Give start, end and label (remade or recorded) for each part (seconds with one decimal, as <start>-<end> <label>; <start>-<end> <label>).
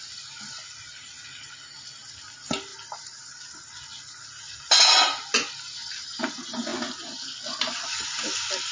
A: 0.0-8.7 recorded